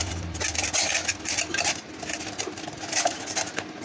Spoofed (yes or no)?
no